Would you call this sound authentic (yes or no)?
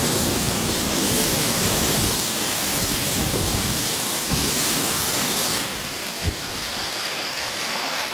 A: no